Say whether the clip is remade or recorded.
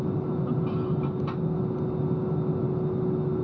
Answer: recorded